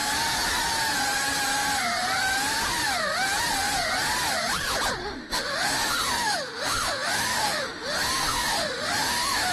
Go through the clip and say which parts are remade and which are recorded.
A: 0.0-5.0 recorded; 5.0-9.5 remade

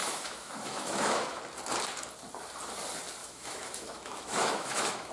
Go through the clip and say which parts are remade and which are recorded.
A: 0.0-1.4 remade; 1.4-3.2 recorded; 3.2-5.1 remade

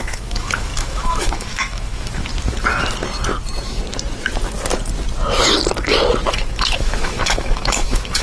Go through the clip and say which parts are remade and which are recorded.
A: 0.0-2.3 remade; 2.3-6.3 recorded; 6.3-8.2 remade